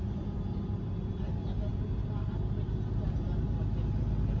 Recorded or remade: recorded